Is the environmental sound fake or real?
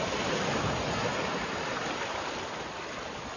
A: real